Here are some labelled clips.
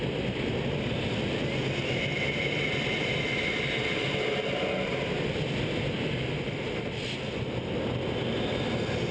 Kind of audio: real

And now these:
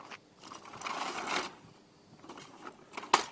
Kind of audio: real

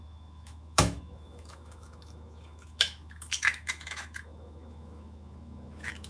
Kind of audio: fake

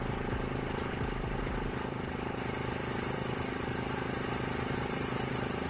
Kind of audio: real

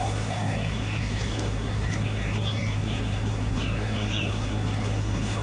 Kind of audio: fake